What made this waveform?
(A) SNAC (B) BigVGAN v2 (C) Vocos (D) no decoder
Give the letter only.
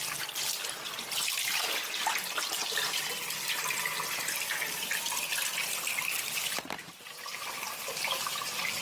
B